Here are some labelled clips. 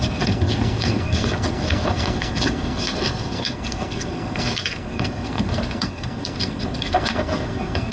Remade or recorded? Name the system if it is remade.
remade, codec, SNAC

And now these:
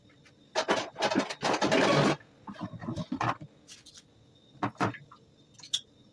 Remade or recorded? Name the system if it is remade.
recorded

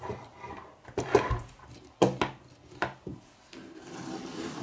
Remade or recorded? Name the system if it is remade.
recorded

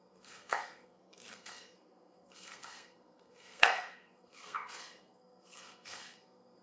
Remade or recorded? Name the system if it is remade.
remade, codec, SNAC